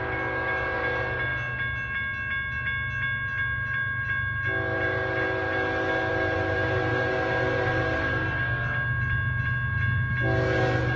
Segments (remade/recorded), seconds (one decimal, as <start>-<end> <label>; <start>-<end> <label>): 0.0-11.0 recorded